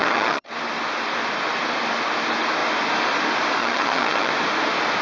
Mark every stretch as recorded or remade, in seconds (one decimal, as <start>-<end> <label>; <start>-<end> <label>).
0.0-0.5 remade; 0.5-3.6 recorded; 3.6-4.3 remade; 4.3-5.0 recorded